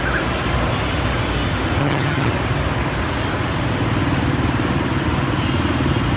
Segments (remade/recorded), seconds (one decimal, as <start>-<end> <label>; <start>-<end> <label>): 0.0-1.8 recorded; 1.8-2.3 remade; 2.3-6.2 recorded